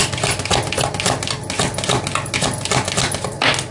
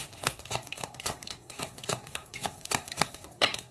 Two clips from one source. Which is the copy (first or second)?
second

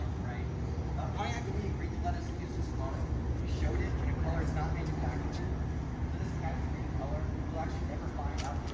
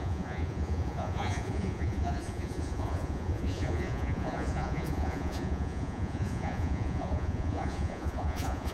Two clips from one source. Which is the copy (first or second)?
second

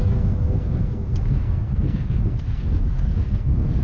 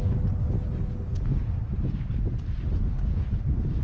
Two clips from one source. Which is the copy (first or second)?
first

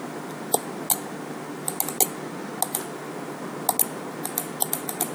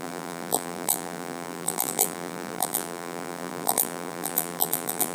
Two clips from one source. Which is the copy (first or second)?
second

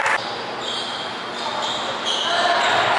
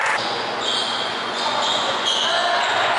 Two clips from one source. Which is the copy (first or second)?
second